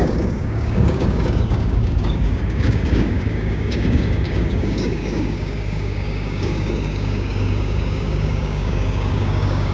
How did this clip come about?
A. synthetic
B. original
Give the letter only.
A